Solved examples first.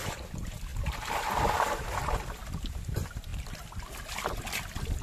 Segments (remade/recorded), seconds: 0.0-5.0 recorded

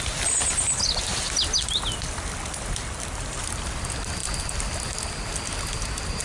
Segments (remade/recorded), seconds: 0.0-6.2 recorded